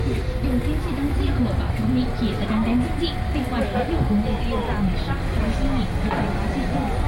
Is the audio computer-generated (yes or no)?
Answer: no